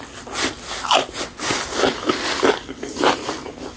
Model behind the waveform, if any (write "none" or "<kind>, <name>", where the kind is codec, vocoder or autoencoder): none